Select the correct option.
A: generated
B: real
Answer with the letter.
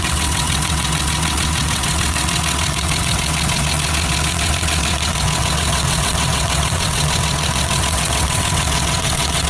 A